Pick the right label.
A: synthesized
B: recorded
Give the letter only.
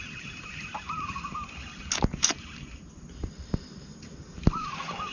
B